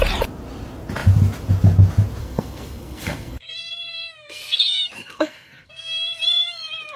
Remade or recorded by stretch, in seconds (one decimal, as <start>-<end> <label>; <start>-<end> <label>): 0.0-2.2 recorded; 2.2-6.2 remade; 6.2-7.0 recorded